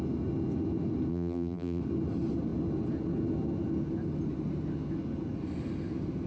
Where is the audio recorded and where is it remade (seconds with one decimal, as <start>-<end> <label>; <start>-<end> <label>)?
0.0-1.1 recorded; 1.1-1.8 remade; 1.8-6.3 recorded